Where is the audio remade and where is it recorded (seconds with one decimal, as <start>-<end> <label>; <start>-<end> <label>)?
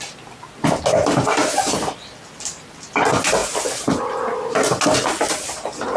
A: 0.0-6.0 recorded